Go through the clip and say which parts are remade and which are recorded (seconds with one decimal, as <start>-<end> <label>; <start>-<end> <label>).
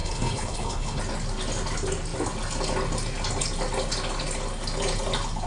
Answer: 0.0-1.0 remade; 1.0-5.5 recorded